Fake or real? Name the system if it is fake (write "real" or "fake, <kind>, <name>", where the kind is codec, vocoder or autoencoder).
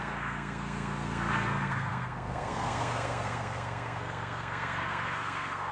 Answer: fake, codec, SNAC